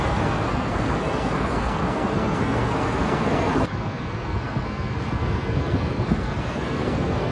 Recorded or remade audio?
remade